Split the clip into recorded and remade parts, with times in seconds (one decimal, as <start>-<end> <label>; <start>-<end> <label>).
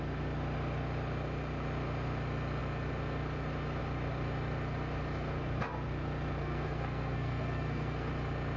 0.0-6.4 recorded; 6.4-8.1 remade; 8.1-8.6 recorded